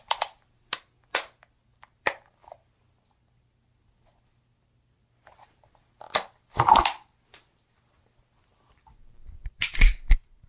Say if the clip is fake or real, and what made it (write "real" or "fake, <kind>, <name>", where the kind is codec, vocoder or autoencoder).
real